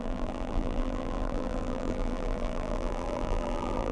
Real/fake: fake